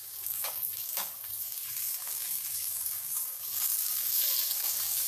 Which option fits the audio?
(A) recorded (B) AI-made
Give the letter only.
B